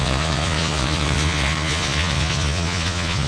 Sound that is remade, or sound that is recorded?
remade